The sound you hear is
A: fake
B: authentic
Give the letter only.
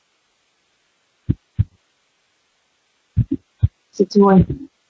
B